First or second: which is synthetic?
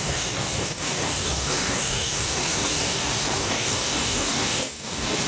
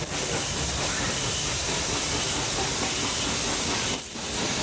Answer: first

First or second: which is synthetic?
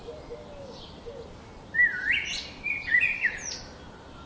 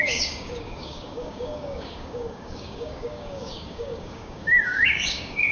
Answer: second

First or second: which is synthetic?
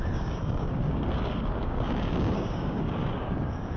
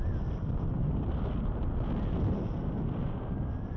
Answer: first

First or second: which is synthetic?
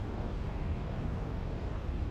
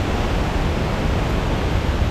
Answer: first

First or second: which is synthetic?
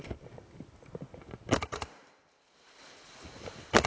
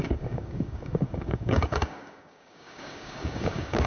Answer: second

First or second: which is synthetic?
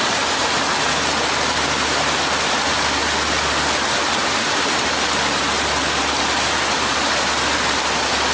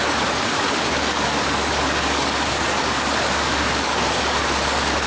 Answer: second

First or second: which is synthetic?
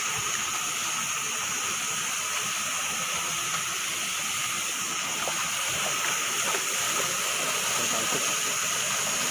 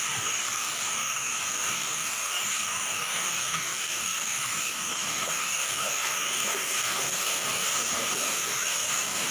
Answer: second